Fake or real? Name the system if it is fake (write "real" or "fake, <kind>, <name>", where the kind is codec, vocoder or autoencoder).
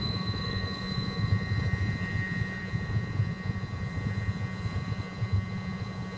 fake, vocoder, Vocos